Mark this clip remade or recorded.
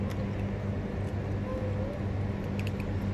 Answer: recorded